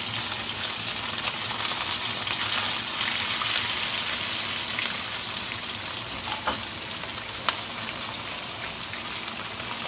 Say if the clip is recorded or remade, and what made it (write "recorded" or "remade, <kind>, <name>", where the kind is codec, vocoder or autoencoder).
recorded